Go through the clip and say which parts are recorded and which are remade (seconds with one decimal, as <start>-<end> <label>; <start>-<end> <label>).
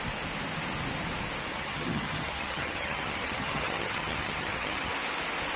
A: 0.0-1.5 recorded; 1.5-4.9 remade; 4.9-5.6 recorded